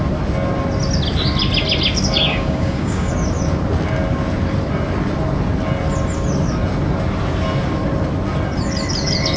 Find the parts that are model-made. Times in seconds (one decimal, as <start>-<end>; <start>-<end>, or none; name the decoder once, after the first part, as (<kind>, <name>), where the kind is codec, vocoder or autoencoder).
2.3-3.1 (codec, DAC)